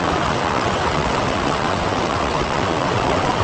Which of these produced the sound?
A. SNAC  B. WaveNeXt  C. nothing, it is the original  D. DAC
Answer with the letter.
B